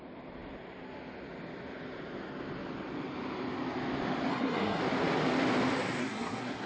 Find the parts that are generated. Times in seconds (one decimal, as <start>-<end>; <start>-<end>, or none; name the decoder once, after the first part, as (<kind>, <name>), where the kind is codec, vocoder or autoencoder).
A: 4.3-4.8 (codec, SNAC); 6.0-6.7